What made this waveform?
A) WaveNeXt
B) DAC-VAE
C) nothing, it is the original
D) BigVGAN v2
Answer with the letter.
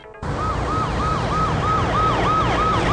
C